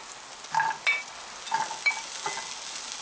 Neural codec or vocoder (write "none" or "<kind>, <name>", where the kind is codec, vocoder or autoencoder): none